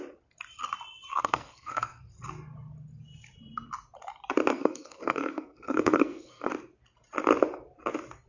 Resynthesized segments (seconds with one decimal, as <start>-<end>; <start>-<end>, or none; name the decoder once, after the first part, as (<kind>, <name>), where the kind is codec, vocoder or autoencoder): 1.1-2.0 (codec, SNAC); 4.5-6.5